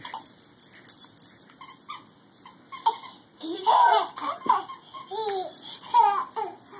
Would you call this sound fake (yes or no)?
no